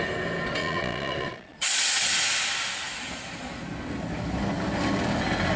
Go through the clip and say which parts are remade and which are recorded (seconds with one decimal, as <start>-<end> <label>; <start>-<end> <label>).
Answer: 0.0-0.6 recorded; 0.6-2.1 remade; 2.1-5.6 recorded